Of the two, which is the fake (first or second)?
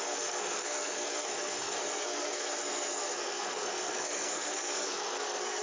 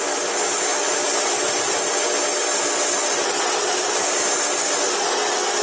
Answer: first